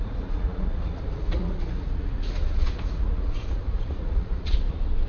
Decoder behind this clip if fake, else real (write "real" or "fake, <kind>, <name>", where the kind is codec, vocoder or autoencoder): fake, vocoder, Vocos